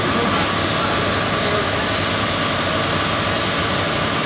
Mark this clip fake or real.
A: real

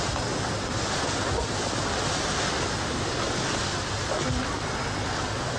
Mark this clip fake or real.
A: real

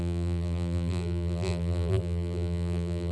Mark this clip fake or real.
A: fake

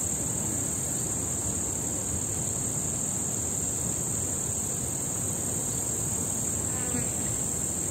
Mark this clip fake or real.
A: real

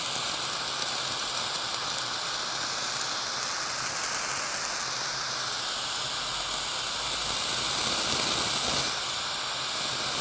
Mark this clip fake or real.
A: real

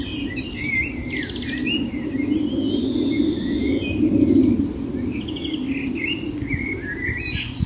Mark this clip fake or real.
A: real